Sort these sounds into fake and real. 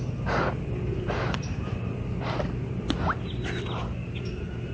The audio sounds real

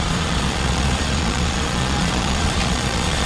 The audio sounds fake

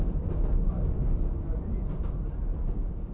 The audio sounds real